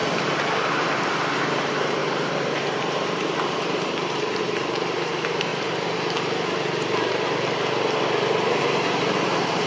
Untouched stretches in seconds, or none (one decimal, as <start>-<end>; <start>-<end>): 0.0-1.3; 5.5-8.6